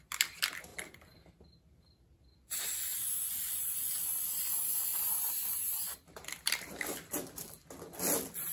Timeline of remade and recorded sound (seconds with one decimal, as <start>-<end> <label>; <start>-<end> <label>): 0.0-0.7 recorded; 0.7-1.3 remade; 1.3-4.9 recorded; 4.9-6.7 remade; 6.7-8.5 recorded